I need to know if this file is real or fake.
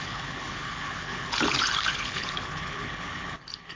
fake